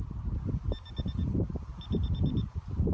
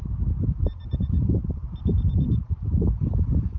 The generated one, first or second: second